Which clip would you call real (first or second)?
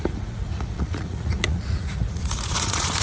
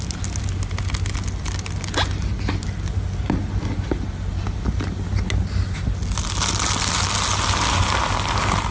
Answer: second